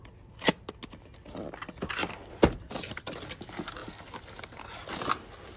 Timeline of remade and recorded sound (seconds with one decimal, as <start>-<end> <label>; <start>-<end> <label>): 0.0-5.6 recorded